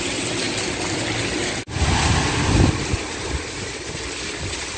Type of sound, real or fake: real